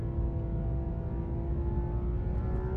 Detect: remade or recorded recorded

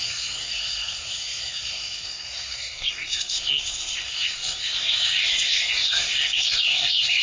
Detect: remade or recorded remade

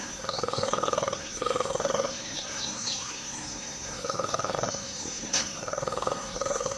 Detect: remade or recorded remade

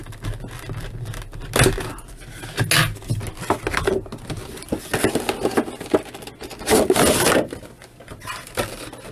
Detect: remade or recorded recorded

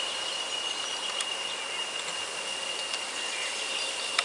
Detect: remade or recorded recorded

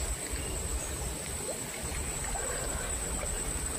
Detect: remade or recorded recorded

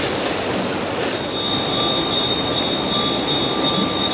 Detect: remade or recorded recorded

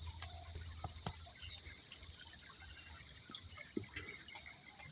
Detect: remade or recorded recorded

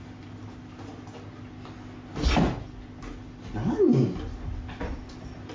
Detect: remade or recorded recorded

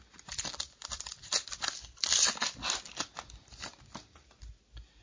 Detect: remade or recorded recorded